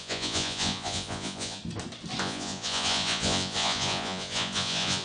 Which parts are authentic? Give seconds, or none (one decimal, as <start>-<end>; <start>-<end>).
1.6-2.2